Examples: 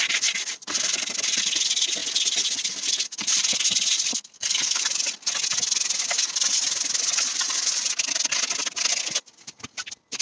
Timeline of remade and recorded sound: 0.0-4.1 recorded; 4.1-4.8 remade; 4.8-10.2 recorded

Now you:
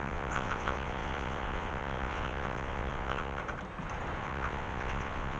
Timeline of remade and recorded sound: 0.0-3.4 remade; 3.4-4.2 recorded; 4.2-5.4 remade

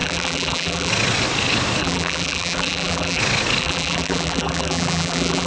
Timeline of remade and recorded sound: 0.0-0.9 remade; 0.9-1.8 recorded; 1.8-3.2 remade; 3.2-3.6 recorded; 3.6-5.5 remade

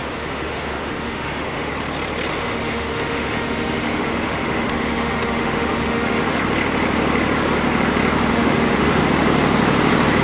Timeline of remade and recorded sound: 0.0-1.7 remade; 1.7-2.3 recorded; 2.3-6.4 remade; 6.4-8.3 recorded; 8.3-9.0 remade; 9.0-10.2 recorded